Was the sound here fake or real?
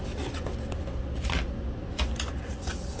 real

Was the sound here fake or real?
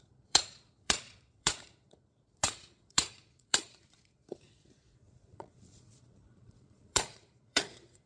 fake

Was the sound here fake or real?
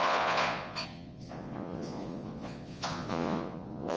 fake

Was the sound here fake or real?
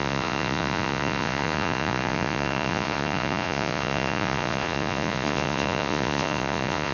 fake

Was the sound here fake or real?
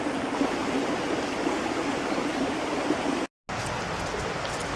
real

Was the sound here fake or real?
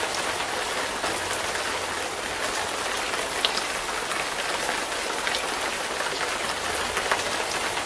real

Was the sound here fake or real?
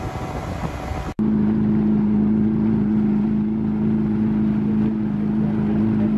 real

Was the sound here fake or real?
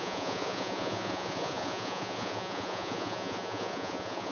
fake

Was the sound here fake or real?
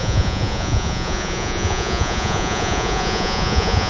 fake